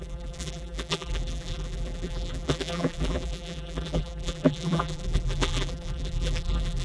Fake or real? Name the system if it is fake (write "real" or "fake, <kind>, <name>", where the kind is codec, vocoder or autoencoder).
fake, vocoder, BigVGAN v2